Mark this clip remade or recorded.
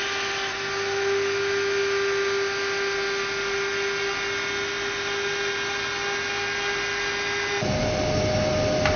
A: recorded